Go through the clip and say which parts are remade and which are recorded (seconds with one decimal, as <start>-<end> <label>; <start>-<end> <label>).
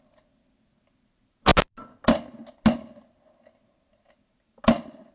0.0-5.1 recorded